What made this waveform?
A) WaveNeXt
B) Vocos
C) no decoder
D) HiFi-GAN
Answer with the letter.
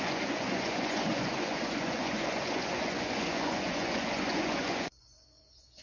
B